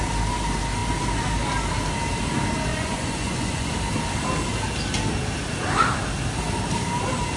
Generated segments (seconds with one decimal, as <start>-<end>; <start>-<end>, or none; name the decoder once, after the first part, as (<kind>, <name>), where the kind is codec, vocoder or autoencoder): 2.7-3.7 (vocoder, Vocos)